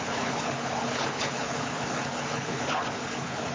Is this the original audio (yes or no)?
no